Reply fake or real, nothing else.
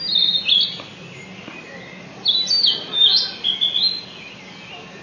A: real